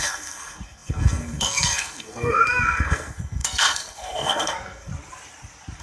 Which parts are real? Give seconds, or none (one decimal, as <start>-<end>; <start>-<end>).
4.9-5.8